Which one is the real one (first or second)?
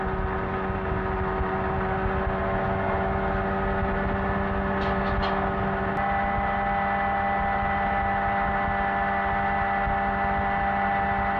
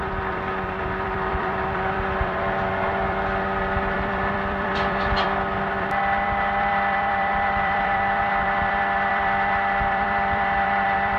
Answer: first